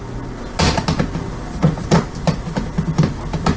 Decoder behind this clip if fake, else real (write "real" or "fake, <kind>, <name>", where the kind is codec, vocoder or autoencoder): real